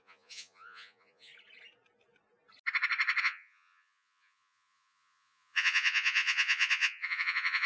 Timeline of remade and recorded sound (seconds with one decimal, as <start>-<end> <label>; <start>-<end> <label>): 0.0-1.3 remade; 1.3-3.2 recorded; 3.2-7.7 remade